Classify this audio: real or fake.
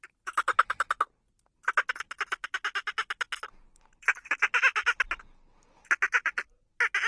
real